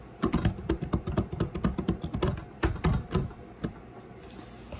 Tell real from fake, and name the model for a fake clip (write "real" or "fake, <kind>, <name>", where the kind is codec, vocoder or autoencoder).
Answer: real